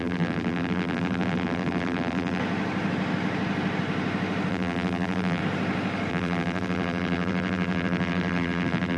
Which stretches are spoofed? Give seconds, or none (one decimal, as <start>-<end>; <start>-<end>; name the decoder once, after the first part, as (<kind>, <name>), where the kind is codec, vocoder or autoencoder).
0.0-2.4 (vocoder, BigVGAN v2); 4.5-5.4; 6.1-9.0